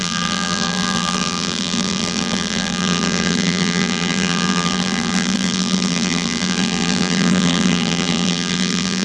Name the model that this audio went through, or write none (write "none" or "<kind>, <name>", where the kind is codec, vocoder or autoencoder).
vocoder, BigVGAN v2